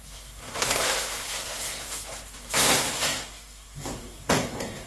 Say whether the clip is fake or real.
fake